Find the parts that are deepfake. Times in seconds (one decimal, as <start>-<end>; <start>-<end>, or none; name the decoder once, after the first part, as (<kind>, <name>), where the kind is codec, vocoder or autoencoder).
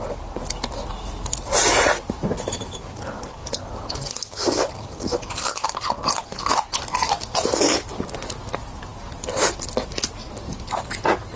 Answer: none